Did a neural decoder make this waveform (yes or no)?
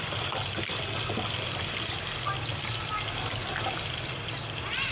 no